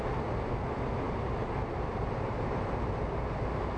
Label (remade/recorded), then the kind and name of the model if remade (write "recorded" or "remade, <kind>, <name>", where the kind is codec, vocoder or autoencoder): recorded